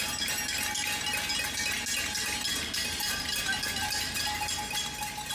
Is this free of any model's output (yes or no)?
yes